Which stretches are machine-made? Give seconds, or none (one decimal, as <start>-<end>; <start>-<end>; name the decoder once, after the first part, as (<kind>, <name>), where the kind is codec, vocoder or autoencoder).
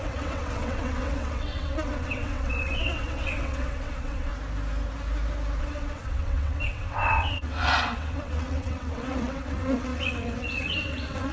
0.0-4.3 (vocoder, WaveNeXt); 5.6-11.3